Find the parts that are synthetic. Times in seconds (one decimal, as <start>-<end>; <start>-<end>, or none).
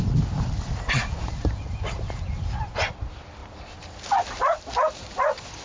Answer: 1.0-3.0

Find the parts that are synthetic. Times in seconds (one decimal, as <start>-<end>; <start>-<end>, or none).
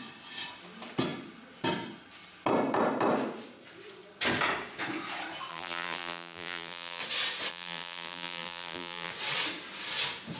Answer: 5.5-7.0; 7.5-9.1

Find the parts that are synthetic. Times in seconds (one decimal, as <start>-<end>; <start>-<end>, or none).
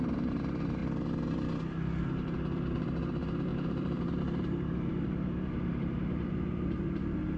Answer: 0.0-0.8; 2.0-7.4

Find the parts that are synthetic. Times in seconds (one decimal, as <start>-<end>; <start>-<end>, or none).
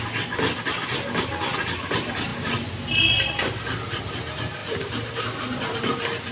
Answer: 4.6-5.3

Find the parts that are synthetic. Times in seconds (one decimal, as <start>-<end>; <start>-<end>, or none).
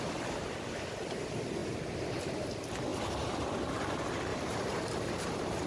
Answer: 1.6-2.1; 4.3-5.7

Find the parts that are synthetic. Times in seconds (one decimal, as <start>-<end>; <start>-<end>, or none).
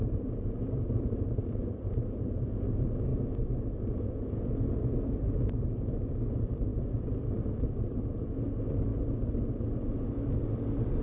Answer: 0.0-3.1; 5.9-8.9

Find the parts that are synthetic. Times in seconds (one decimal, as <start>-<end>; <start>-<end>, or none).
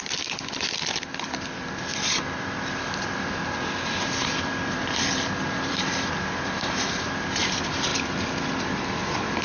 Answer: 0.0-7.9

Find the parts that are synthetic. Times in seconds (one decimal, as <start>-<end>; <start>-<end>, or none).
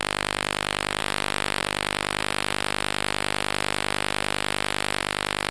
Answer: 1.0-1.6; 2.2-5.0